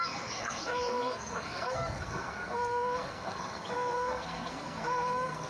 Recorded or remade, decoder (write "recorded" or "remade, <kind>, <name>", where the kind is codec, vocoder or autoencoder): remade, codec, SNAC